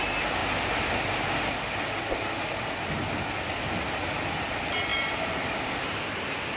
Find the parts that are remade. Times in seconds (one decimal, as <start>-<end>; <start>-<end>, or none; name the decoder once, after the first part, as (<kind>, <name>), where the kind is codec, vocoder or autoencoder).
0.0-0.4 (vocoder, BigVGAN v2); 4.4-6.6